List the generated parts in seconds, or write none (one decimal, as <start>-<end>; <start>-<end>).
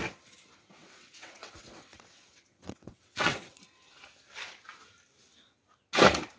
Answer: 0.8-3.6